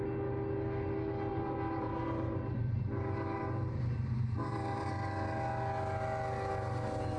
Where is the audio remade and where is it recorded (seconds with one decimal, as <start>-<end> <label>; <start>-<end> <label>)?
0.0-1.3 recorded; 1.3-4.9 remade; 4.9-7.2 recorded